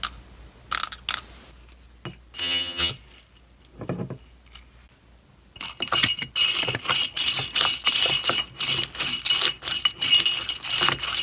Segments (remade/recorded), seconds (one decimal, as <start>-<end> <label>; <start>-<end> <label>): 0.0-2.4 recorded; 2.4-2.9 remade; 2.9-11.2 recorded